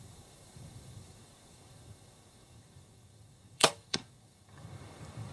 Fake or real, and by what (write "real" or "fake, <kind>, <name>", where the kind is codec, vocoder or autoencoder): fake, codec, DAC